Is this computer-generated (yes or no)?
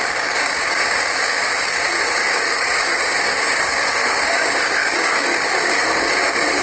yes